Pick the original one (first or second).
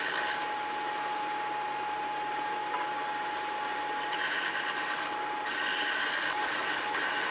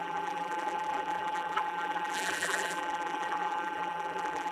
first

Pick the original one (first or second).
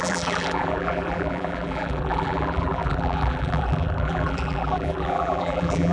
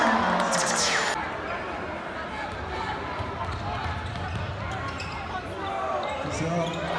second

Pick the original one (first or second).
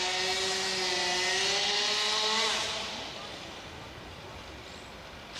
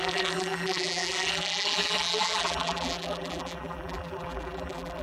first